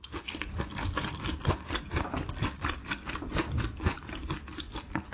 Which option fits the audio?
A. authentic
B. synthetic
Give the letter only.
A